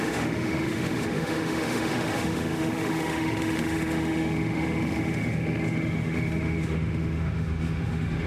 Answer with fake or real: fake